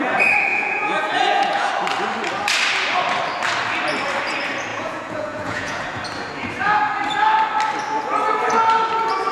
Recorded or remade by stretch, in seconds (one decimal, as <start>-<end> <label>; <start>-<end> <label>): 0.0-0.5 recorded; 0.5-1.7 remade; 1.7-4.7 recorded; 4.7-5.8 remade; 5.8-9.3 recorded